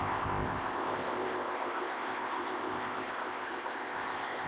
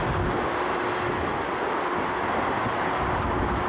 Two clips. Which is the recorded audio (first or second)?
second